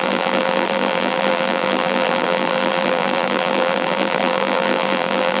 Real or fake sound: fake